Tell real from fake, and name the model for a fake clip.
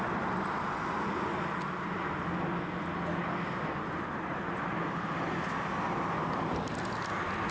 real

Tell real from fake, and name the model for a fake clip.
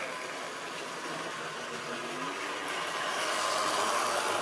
real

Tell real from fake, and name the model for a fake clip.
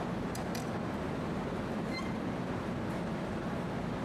real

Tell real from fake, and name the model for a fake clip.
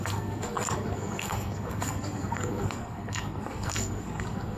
fake, codec, SNAC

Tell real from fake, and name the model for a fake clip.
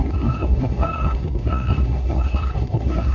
fake, codec, SNAC